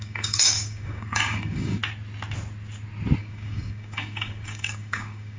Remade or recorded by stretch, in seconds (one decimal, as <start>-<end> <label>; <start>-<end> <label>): 0.0-1.8 remade; 1.8-3.2 recorded; 3.2-5.4 remade